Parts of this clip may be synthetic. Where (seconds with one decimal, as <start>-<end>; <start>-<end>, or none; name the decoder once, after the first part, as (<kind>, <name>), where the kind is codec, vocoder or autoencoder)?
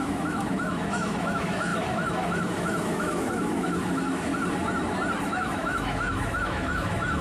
0.0-4.3 (autoencoder, DAC-VAE); 5.3-7.2